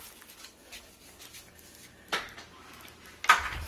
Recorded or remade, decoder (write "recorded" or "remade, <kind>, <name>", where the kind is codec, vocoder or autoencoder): recorded